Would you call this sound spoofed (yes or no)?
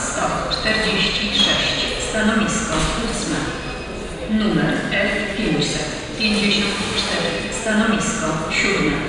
no